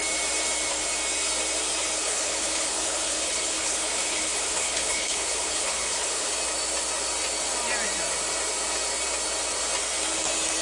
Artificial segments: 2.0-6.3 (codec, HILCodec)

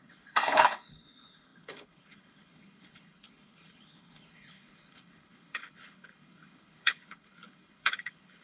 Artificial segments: 0.0-8.4 (codec, HILCodec)

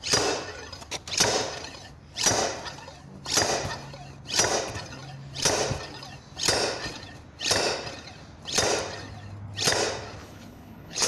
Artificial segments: 10.2-11.1 (codec, HILCodec)

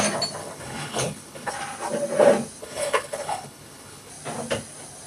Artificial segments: 0.4-1.5 (codec, HILCodec); 2.6-4.1

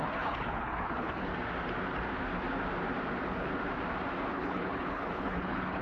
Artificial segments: 0.0-1.3 (codec, HILCodec); 4.3-5.8